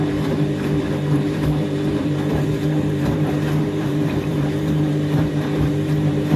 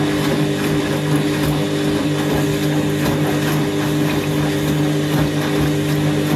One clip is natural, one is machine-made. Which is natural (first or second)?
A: second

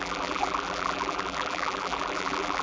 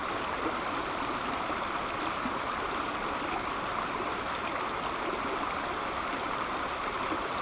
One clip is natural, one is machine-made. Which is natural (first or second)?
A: second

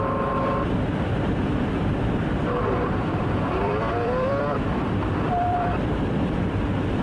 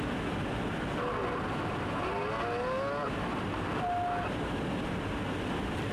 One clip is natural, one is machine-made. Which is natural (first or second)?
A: second